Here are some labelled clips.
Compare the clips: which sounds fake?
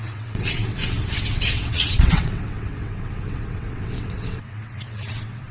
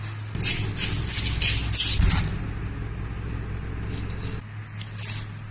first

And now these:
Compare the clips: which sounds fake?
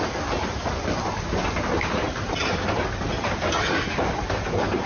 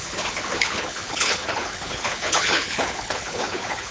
second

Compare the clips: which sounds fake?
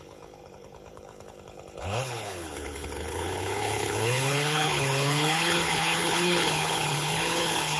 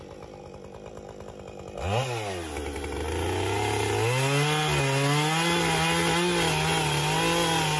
first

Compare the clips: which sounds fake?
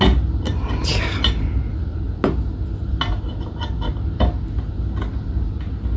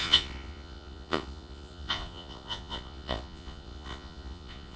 second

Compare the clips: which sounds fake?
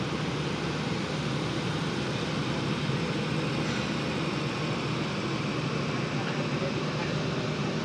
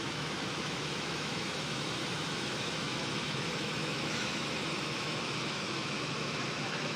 second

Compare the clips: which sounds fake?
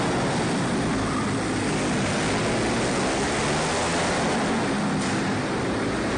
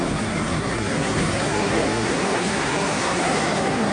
second